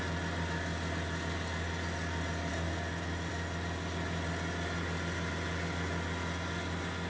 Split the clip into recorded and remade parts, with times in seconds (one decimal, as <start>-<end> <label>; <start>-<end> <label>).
0.0-7.1 recorded